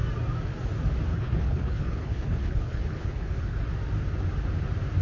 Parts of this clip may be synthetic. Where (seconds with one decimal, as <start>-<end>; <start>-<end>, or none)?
1.1-3.6